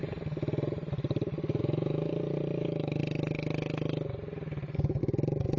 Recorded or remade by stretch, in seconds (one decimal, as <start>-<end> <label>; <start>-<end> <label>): 0.0-1.6 recorded; 1.6-2.1 remade; 2.1-2.6 recorded; 2.6-3.0 remade; 3.0-5.0 recorded; 5.0-5.6 remade